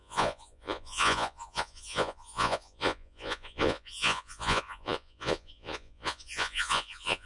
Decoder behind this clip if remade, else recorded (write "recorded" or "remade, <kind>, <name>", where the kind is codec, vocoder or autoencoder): remade, vocoder, Vocos